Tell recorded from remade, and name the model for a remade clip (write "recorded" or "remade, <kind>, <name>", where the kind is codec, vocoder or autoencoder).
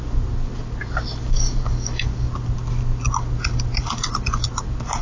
recorded